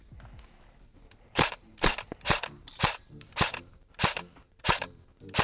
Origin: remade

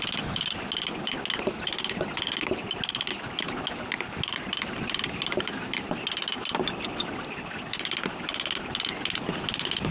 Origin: recorded